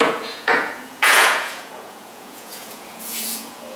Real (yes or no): no